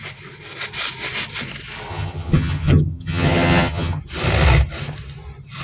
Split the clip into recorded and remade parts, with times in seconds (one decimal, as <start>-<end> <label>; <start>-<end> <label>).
0.0-1.9 recorded; 1.9-4.0 remade; 4.0-5.6 recorded